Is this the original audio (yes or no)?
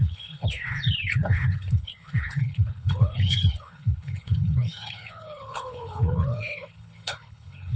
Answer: no